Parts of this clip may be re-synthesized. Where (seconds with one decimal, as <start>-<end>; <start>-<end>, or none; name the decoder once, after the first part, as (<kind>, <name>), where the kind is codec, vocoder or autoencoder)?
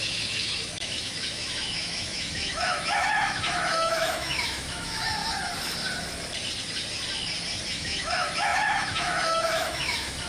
0.0-5.2 (autoencoder, DAC-VAE); 7.7-10.3